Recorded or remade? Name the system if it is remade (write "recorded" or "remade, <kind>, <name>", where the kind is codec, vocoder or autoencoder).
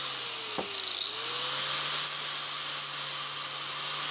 recorded